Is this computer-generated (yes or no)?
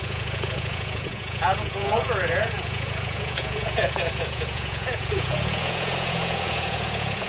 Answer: yes